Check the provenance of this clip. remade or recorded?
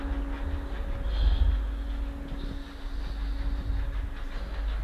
recorded